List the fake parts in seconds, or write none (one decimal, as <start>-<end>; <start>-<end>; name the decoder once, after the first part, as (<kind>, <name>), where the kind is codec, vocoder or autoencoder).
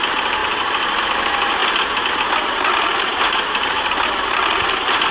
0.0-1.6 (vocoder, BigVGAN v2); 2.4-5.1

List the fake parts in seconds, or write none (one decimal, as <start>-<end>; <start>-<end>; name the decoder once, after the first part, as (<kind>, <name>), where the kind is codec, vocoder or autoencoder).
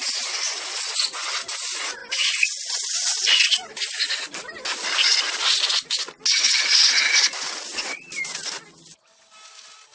none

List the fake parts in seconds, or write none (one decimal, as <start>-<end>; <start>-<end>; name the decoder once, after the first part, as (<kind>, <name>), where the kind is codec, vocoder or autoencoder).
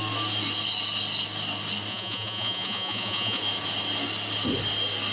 1.9-3.4 (vocoder, Vocos)